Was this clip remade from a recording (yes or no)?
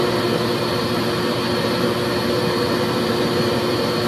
no